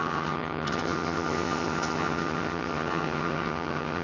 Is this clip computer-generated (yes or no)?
yes